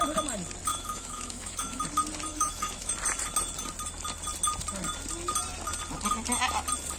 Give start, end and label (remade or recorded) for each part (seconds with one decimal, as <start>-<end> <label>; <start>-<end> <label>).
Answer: 0.0-0.7 recorded; 0.7-1.8 remade; 1.8-2.3 recorded; 2.3-2.9 remade; 2.9-7.0 recorded